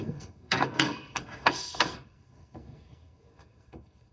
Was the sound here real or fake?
fake